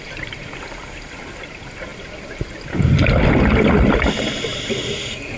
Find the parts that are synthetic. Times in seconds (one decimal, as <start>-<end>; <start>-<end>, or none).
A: none